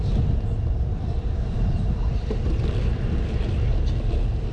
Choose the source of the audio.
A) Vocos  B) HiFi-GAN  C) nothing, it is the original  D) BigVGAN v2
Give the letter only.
D